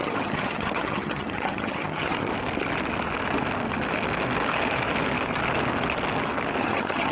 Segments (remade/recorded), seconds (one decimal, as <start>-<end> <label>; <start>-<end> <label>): 0.0-2.3 remade; 2.3-6.6 recorded; 6.6-7.1 remade